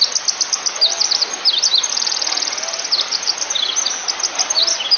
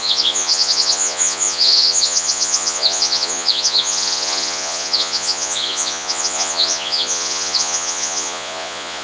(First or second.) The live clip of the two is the first